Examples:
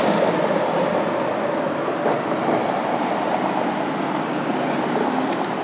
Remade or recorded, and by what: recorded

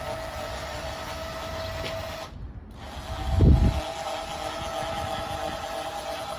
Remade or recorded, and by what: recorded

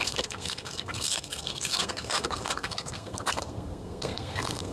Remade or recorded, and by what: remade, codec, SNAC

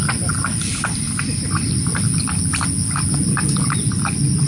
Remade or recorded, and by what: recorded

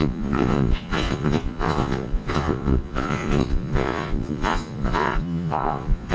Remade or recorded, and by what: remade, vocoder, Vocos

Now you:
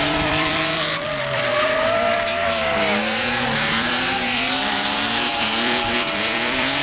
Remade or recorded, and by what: remade, vocoder, BigVGAN v2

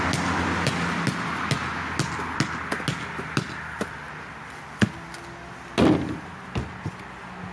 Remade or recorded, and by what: recorded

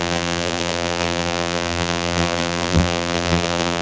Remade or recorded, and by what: remade, vocoder, BigVGAN v2